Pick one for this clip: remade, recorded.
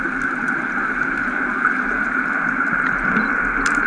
recorded